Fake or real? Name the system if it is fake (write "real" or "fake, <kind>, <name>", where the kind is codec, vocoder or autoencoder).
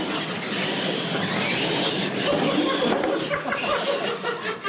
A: real